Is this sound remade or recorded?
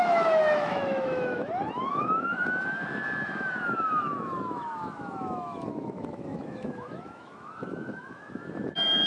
remade